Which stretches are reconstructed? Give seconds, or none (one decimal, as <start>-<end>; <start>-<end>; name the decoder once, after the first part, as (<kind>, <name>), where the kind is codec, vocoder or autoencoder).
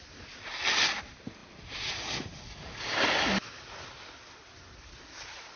none